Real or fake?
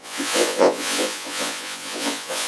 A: fake